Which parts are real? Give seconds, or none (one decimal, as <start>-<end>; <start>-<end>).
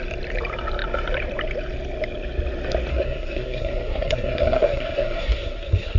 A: 0.0-2.9